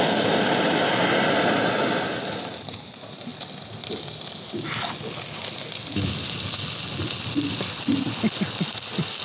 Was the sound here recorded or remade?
recorded